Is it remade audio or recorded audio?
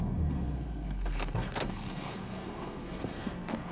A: remade